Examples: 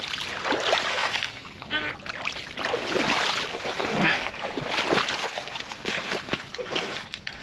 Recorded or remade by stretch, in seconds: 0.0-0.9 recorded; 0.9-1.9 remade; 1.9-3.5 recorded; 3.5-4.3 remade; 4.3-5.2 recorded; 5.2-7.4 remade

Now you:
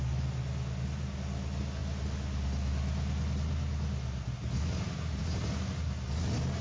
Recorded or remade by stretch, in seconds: 0.0-6.6 recorded

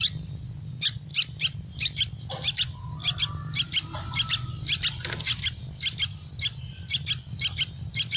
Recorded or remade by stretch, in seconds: 0.0-8.2 recorded

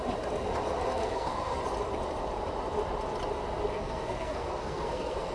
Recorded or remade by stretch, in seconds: 0.0-0.9 recorded; 0.9-1.6 remade; 1.6-3.7 recorded; 3.7-5.3 remade

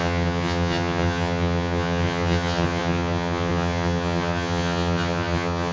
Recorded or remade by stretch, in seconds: 0.0-5.7 remade

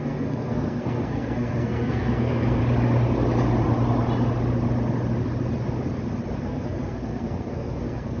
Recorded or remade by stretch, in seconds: 0.0-2.6 remade; 2.6-6.4 recorded; 6.4-8.2 remade

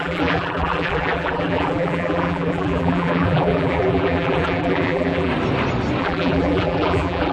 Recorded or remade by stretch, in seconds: 0.0-5.3 remade; 5.3-6.0 recorded; 6.0-7.3 remade